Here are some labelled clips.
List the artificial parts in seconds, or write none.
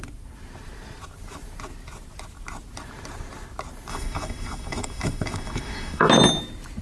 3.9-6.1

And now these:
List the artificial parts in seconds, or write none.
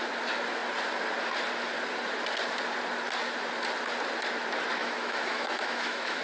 4.8-6.2